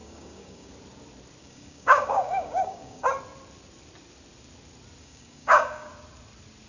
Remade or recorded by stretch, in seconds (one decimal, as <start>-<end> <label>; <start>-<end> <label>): 0.0-0.7 remade; 0.7-1.4 recorded; 1.4-3.1 remade; 3.1-5.0 recorded; 5.0-5.9 remade; 5.9-6.7 recorded